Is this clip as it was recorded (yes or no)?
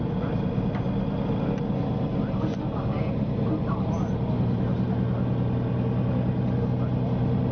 yes